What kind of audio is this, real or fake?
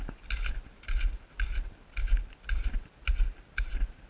real